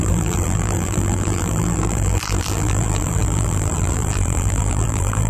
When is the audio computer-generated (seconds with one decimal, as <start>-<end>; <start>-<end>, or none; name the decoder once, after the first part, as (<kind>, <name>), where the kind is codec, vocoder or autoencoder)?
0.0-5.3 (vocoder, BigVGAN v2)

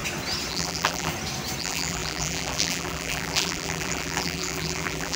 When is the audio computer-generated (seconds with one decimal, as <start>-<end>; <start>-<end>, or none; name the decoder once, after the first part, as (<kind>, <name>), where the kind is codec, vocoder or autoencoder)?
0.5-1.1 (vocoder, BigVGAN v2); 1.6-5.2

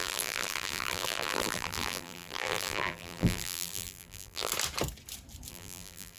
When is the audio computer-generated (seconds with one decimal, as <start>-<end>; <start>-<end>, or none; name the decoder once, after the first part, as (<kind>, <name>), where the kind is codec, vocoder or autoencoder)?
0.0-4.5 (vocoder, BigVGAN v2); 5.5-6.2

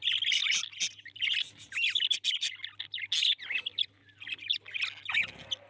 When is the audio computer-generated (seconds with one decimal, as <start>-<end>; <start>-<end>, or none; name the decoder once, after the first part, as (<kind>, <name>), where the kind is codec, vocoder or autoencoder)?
none

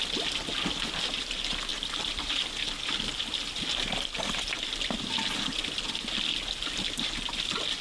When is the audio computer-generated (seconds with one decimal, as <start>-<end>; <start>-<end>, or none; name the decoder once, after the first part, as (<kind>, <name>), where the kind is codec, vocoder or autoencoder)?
none

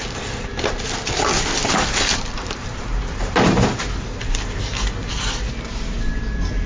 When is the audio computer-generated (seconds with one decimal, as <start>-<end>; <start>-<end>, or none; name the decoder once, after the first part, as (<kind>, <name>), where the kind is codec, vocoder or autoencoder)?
1.6-4.6 (vocoder, BigVGAN v2); 5.0-5.5

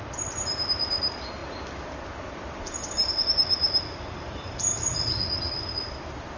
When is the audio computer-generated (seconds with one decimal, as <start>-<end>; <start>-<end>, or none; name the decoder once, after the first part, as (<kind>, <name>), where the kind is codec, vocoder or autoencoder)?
0.0-4.9 (vocoder, BigVGAN v2); 5.5-6.4

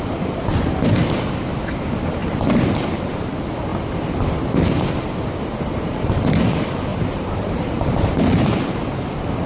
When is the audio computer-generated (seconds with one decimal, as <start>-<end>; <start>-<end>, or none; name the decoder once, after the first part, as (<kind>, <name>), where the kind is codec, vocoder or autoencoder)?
6.9-8.7 (vocoder, BigVGAN v2)